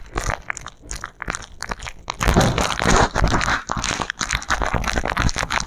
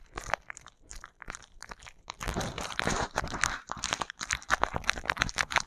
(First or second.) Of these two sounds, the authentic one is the first